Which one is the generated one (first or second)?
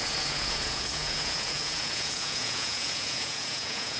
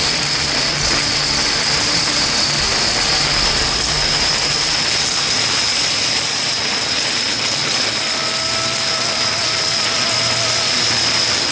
first